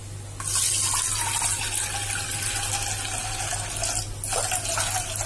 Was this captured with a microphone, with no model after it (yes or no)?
yes